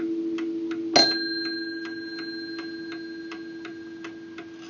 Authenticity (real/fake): real